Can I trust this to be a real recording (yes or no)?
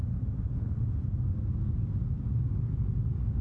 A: yes